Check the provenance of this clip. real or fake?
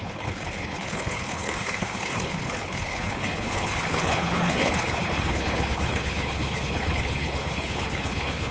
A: fake